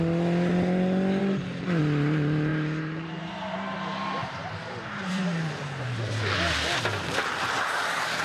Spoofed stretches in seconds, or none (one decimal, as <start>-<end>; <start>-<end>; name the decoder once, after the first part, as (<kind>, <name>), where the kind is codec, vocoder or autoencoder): 1.2-1.8 (vocoder, BigVGAN v2); 2.5-6.8

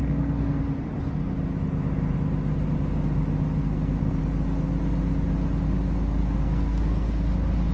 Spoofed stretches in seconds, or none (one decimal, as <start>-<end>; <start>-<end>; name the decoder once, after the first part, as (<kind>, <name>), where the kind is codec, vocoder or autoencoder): 0.0-0.6 (codec, SNAC); 3.6-4.2; 6.2-7.3

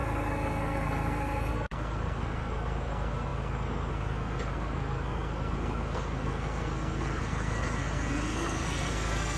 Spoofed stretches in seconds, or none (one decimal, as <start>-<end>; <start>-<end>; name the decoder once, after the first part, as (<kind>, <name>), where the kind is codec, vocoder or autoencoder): 0.0-9.4 (codec, SNAC)

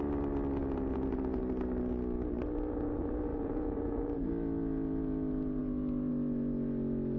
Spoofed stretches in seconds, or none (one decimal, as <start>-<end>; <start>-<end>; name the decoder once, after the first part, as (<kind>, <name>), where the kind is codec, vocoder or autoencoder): 0.6-1.4 (vocoder, Vocos); 3.3-4.3